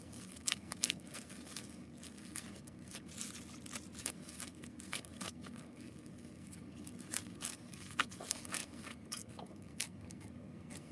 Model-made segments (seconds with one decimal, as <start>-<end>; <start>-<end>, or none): 0.0-3.1; 4.0-10.9